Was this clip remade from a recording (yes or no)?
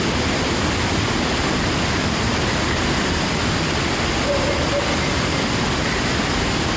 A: no